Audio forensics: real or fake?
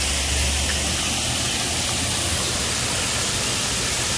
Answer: real